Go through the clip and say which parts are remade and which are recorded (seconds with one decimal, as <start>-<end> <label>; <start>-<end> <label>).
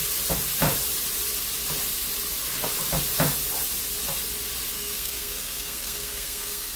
0.0-4.7 recorded; 4.7-6.8 remade